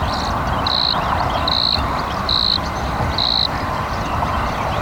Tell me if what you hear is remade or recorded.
remade